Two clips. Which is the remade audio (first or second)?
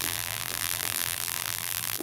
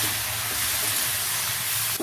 first